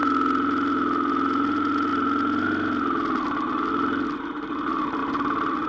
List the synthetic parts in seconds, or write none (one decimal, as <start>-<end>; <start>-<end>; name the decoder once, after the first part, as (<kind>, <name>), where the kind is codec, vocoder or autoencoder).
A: none